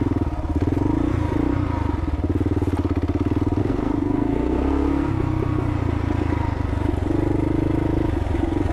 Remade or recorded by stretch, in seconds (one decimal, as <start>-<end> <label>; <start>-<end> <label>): 0.0-3.6 recorded; 3.6-5.1 remade; 5.1-8.7 recorded